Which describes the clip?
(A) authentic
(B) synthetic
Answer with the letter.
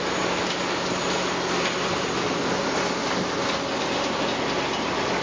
A